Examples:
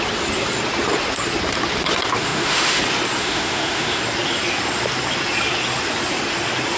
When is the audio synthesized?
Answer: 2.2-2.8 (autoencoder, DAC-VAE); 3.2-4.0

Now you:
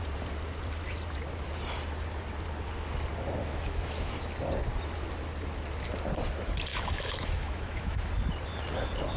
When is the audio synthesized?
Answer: 3.4-4.2 (autoencoder, DAC-VAE); 6.7-8.1

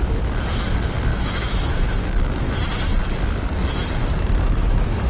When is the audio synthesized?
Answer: 1.1-2.5 (autoencoder, DAC-VAE); 4.0-5.1

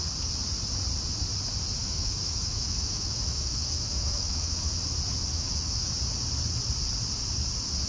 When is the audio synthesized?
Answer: 1.8-4.7 (autoencoder, DAC-VAE); 5.3-5.9

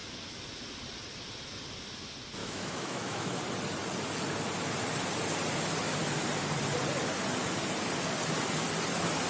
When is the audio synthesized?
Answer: 2.4-3.4 (autoencoder, DAC-VAE)

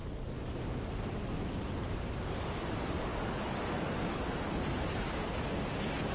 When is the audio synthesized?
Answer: none

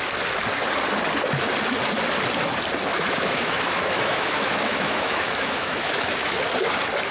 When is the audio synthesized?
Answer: 2.9-6.3 (autoencoder, DAC-VAE)